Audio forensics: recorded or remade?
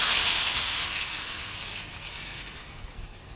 remade